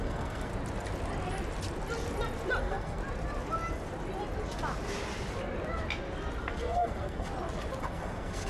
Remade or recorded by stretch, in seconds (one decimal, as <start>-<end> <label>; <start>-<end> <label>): 0.0-0.5 remade; 0.5-2.6 recorded; 2.6-3.0 remade; 3.0-6.4 recorded; 6.4-7.3 remade; 7.3-7.8 recorded; 7.8-8.5 remade